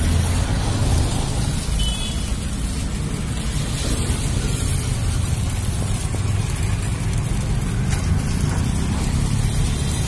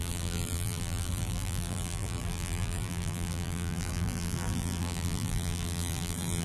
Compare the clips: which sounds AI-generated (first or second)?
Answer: second